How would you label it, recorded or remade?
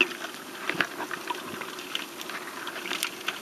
recorded